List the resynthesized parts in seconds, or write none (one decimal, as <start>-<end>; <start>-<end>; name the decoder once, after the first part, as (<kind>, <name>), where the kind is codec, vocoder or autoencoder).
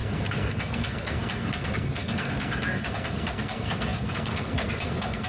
0.0-5.3 (codec, SNAC)